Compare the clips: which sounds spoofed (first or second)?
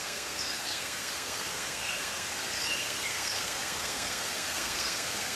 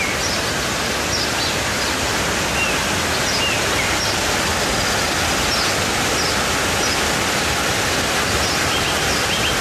first